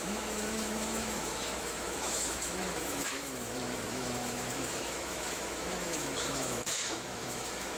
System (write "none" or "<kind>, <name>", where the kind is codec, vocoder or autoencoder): autoencoder, DAC-VAE